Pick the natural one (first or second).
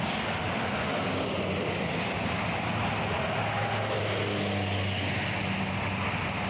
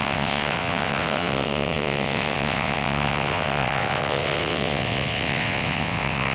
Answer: first